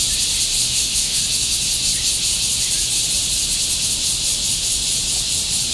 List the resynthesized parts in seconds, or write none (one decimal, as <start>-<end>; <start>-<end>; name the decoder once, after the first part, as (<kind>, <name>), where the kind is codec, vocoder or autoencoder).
0.6-1.2 (autoencoder, DAC-VAE)